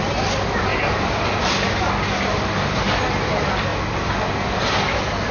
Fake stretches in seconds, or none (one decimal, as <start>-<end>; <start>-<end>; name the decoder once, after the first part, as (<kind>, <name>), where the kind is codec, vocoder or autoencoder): none